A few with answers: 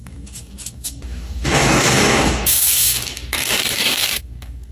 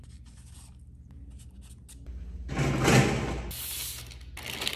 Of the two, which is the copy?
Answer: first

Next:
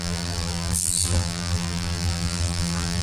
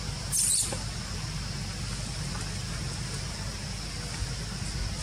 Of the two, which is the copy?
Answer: first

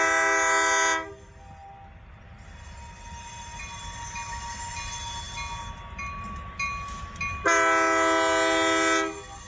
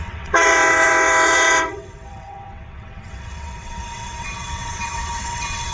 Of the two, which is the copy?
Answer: second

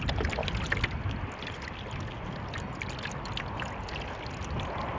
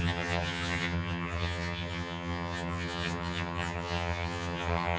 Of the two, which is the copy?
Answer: second